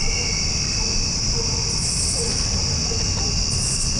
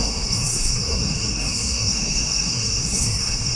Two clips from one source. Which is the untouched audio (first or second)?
first